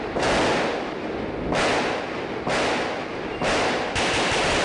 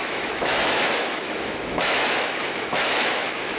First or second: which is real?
first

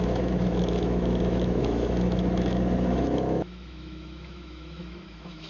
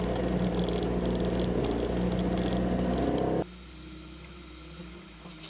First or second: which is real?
second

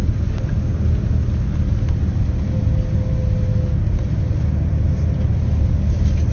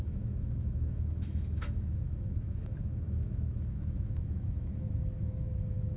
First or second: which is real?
first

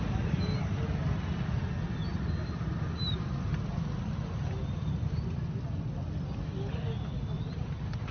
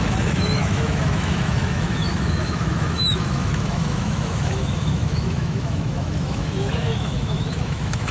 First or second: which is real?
first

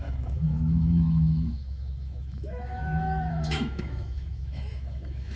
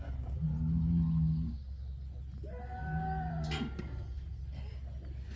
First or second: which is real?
second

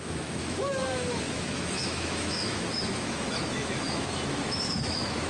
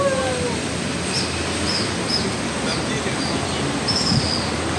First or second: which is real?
second